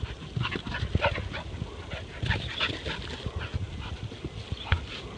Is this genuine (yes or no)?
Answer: yes